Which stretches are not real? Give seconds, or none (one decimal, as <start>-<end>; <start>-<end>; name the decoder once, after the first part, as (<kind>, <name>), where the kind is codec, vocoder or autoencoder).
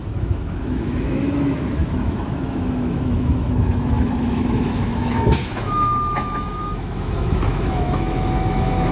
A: 0.0-8.9 (autoencoder, DAC-VAE)